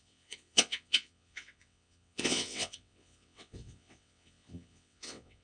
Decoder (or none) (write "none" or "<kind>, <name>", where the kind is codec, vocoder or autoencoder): vocoder, WaveNeXt